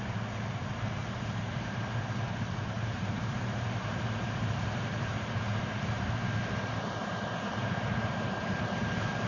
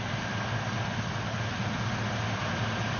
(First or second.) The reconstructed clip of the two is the first